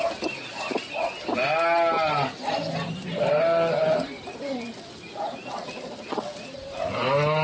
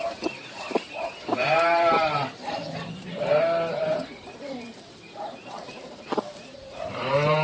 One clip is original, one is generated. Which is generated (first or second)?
second